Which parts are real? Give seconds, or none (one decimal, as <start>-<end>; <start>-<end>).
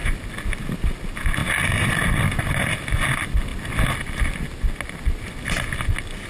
0.0-6.3